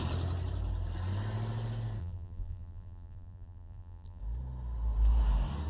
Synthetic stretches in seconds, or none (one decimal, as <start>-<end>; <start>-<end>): 2.0-4.2